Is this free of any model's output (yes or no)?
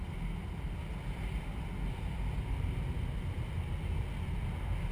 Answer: yes